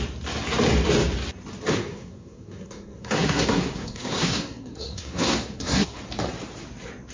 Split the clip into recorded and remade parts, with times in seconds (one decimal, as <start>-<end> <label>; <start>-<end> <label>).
0.0-1.7 recorded; 1.7-6.0 remade; 6.0-7.1 recorded